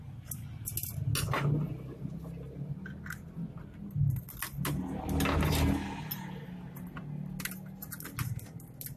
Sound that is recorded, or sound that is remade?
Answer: recorded